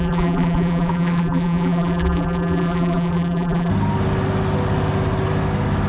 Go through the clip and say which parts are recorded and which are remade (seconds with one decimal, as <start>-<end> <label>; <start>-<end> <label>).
0.0-3.7 remade; 3.7-5.9 recorded